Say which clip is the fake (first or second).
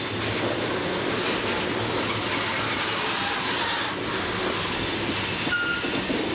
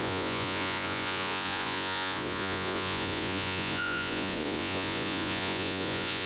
second